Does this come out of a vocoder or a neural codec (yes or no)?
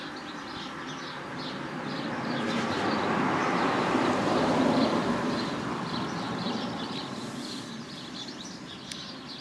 yes